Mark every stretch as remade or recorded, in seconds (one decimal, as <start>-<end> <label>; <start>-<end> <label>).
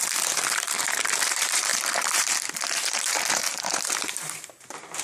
0.0-5.0 remade